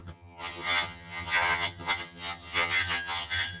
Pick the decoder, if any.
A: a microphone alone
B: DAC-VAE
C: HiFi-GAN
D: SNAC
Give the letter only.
C